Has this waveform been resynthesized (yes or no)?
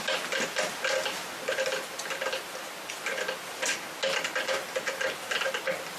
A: no